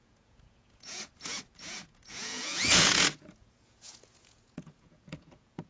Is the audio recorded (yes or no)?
no